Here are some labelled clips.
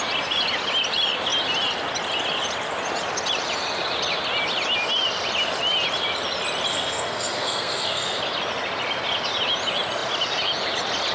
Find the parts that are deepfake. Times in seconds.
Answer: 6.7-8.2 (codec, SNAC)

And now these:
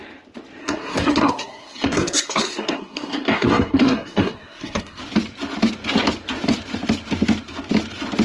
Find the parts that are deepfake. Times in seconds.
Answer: 0.6-5.0 (codec, SNAC)

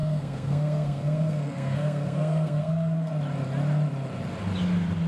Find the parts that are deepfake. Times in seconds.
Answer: 0.0-3.1 (codec, SNAC)